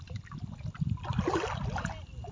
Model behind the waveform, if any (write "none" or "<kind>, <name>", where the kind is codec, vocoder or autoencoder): none